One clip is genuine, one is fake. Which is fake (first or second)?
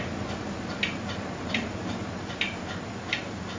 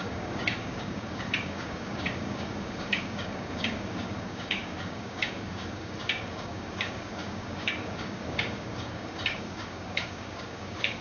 second